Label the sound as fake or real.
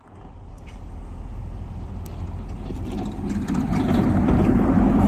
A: real